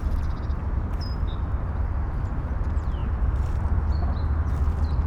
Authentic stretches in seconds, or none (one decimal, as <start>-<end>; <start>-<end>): 0.0-0.6; 1.3-3.0; 3.8-5.1

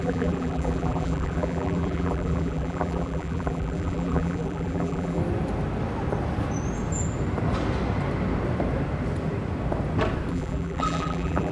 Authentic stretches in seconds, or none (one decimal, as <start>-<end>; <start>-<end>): 5.2-10.3